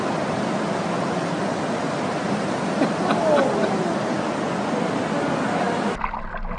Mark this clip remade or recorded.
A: recorded